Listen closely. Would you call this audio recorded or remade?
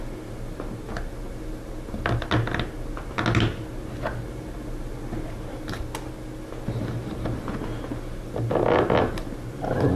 recorded